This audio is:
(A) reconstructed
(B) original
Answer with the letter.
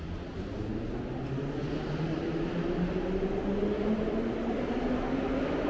B